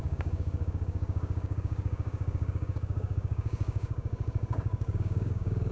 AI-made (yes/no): yes